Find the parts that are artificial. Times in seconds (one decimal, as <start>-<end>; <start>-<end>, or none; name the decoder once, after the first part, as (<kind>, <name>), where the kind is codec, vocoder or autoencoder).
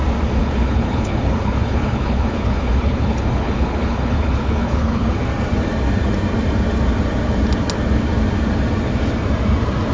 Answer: 0.4-5.2 (codec, HILCodec)